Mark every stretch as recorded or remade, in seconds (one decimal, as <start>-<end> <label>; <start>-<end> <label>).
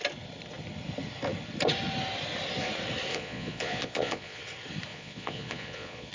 0.0-3.1 recorded; 3.1-4.4 remade; 4.4-4.9 recorded; 4.9-6.1 remade